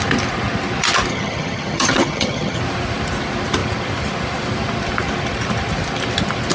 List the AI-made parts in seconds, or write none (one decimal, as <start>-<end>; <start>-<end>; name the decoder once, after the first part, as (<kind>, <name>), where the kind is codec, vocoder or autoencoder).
1.1-2.6 (vocoder, HiFi-GAN)